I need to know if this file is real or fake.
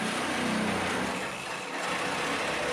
real